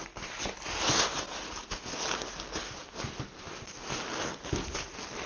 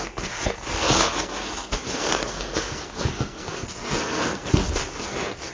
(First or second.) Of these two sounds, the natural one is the first